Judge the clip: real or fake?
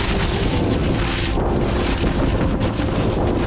real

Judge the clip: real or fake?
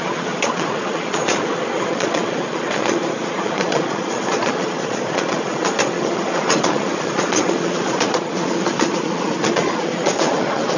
fake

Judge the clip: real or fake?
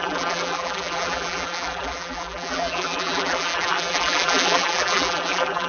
fake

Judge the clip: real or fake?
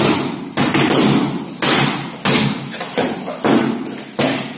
real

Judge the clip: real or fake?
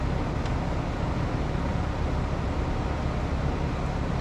real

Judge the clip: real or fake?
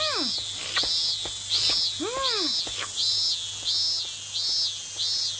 real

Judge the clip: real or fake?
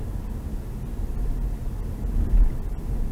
real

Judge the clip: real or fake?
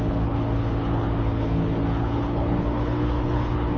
fake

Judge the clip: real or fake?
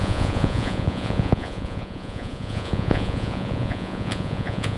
fake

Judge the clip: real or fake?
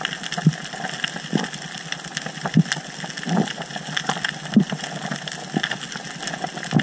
real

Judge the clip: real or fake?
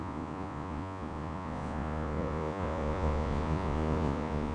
fake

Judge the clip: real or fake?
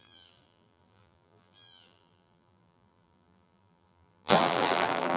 fake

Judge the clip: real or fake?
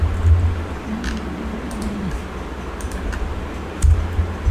real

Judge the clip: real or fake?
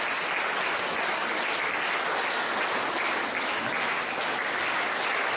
real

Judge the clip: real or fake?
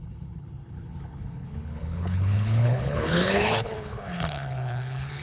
fake